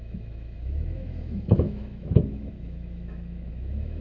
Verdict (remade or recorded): remade